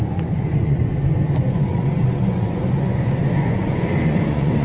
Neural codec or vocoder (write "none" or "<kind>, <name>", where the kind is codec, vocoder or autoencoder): vocoder, Vocos